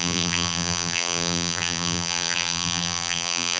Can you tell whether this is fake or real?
fake